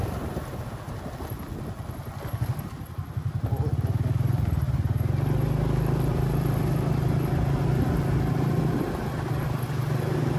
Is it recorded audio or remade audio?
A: recorded